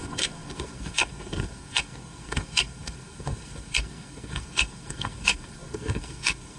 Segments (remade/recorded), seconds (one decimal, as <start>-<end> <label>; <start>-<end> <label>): 0.0-6.6 remade